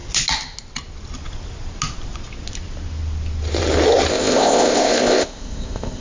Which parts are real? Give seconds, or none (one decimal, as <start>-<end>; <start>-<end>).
0.0-4.1

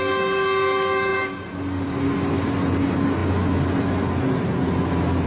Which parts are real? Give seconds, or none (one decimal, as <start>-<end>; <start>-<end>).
0.0-5.3

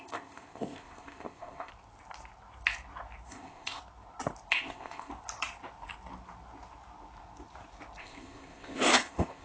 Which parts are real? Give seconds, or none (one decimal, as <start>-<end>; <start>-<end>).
1.7-3.3; 3.8-4.5; 5.1-8.0

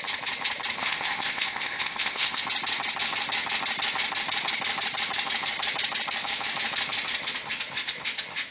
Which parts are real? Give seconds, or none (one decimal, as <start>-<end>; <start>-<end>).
0.0-0.8; 2.4-8.5

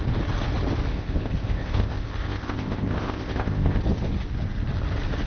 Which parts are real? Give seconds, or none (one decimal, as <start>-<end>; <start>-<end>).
0.0-0.9; 3.8-5.3

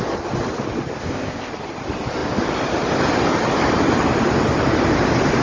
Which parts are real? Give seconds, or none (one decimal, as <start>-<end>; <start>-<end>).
0.0-1.0; 1.5-5.4